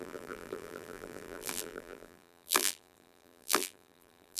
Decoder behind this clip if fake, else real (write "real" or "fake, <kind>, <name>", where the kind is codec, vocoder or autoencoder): fake, vocoder, BigVGAN v2